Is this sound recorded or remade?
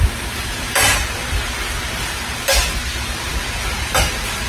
recorded